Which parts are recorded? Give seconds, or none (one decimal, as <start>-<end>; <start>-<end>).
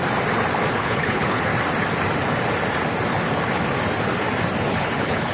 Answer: 0.0-0.7; 1.5-4.7